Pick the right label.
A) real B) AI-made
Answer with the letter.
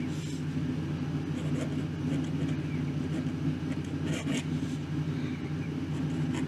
A